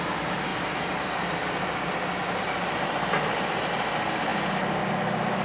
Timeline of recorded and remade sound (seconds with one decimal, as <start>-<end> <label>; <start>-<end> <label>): 0.0-5.4 recorded